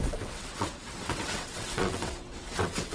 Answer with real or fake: fake